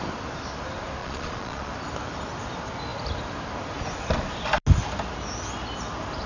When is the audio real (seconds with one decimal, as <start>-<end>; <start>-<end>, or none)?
0.0-1.0; 1.7-6.3